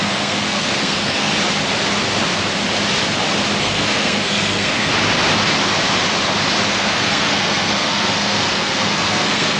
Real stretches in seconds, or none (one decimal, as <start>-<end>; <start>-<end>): 1.3-3.6; 4.9-6.7